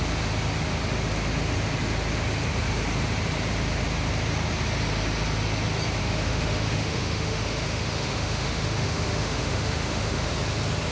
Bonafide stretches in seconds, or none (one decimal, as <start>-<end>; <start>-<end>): 0.0-6.0; 10.3-10.9